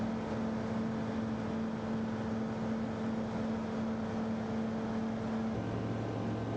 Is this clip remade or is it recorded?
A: recorded